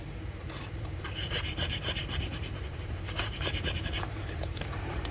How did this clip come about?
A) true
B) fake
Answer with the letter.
B